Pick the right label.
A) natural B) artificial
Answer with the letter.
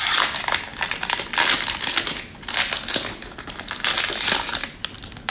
A